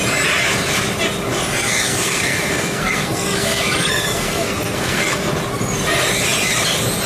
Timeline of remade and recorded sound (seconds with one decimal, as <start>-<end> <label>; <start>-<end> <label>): 0.0-1.5 recorded; 1.5-5.2 remade; 5.2-7.1 recorded

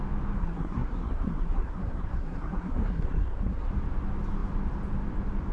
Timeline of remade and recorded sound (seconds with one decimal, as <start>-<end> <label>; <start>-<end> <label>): 0.0-0.4 recorded; 0.4-3.7 remade; 3.7-5.5 recorded

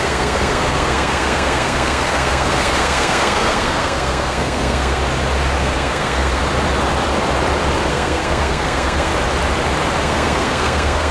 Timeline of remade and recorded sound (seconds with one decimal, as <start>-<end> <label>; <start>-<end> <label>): 0.0-5.0 remade; 5.0-5.6 recorded; 5.6-6.4 remade; 6.4-7.9 recorded; 7.9-9.1 remade; 9.1-10.0 recorded; 10.0-11.1 remade

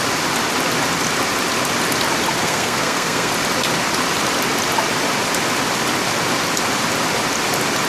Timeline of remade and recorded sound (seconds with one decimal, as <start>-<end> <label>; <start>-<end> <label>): 0.0-2.4 recorded; 2.4-3.3 remade; 3.3-7.9 recorded

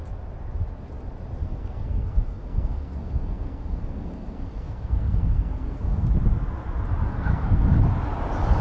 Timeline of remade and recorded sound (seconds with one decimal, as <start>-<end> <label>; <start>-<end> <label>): 0.0-1.4 recorded; 1.4-6.1 remade; 6.1-7.1 recorded; 7.1-7.8 remade; 7.8-8.6 recorded

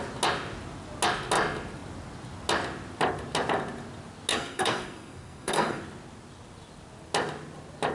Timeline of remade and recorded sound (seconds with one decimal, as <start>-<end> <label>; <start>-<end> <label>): 0.0-4.3 recorded; 4.3-5.8 remade; 5.8-7.9 recorded

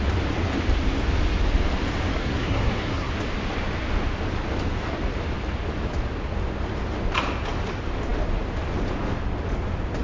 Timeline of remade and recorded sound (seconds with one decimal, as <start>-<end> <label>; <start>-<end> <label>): 0.0-2.1 recorded; 2.1-3.1 remade; 3.1-10.0 recorded

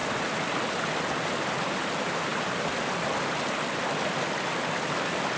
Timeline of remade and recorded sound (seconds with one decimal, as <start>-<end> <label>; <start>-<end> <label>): 0.0-5.4 recorded